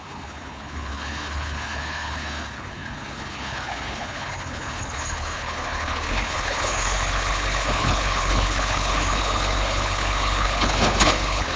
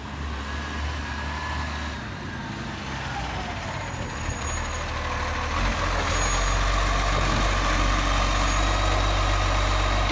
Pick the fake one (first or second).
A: first